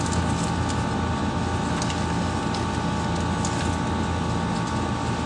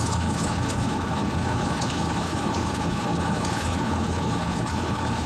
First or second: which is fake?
second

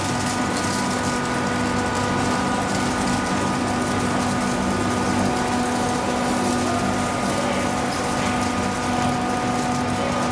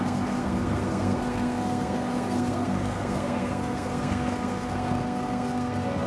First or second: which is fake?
second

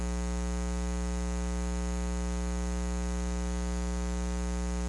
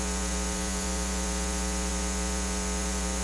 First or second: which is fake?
second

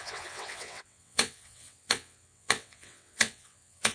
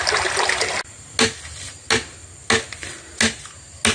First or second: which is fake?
first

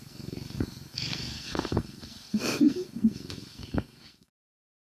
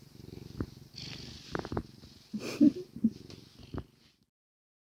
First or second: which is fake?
first